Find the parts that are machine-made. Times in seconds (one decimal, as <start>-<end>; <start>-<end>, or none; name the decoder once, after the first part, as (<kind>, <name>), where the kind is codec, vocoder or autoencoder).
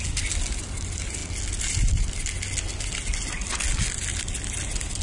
none